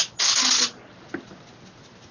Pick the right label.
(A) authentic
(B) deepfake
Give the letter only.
A